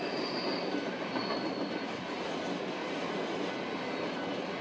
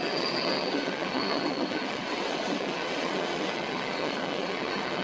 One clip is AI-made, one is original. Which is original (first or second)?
first